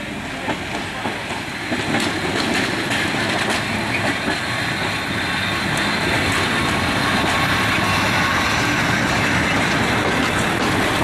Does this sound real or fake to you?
real